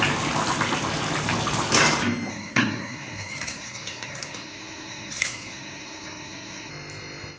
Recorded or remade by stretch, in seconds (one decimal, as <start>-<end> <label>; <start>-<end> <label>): 0.0-2.3 recorded; 2.3-6.7 remade; 6.7-7.4 recorded